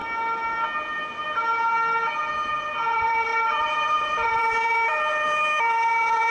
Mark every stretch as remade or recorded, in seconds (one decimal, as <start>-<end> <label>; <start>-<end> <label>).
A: 0.0-2.9 recorded; 2.9-6.3 remade